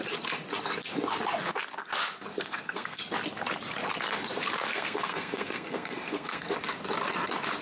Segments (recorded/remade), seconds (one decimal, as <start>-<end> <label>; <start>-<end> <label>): 0.0-2.3 recorded; 2.3-3.0 remade; 3.0-4.7 recorded; 4.7-6.5 remade; 6.5-7.6 recorded